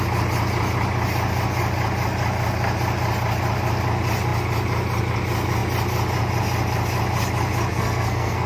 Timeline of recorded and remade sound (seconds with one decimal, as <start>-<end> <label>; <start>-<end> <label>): 0.0-7.7 recorded; 7.7-8.5 remade